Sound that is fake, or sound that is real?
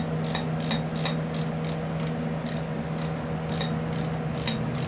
real